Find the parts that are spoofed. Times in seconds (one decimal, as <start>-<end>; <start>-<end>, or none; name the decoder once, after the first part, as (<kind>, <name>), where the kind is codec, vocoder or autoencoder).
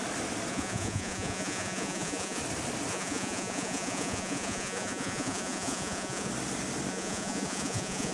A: 0.5-2.4 (vocoder, Vocos); 2.9-6.3; 6.9-8.1